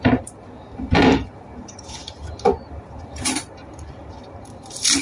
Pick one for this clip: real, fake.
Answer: fake